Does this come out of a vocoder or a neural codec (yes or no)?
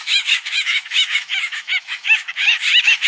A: yes